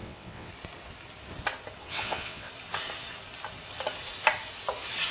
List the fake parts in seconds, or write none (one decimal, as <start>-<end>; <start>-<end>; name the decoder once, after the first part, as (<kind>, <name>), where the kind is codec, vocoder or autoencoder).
0.0-0.5 (vocoder, WaveNeXt); 1.8-2.5

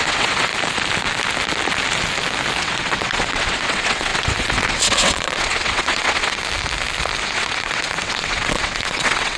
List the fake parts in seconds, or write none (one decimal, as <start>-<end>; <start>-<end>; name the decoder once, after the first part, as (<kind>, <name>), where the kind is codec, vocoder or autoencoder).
0.0-0.5 (vocoder, WaveNeXt); 2.6-6.4; 7.2-9.4

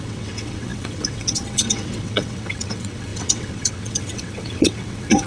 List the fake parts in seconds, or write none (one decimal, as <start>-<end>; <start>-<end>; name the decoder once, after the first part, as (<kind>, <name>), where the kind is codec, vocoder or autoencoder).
0.0-5.3 (vocoder, WaveNeXt)

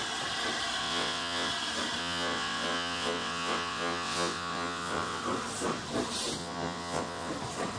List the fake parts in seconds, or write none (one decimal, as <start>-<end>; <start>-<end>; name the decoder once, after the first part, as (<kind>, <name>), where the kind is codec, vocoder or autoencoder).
0.8-1.5 (vocoder, WaveNeXt); 2.0-5.2; 6.4-7.3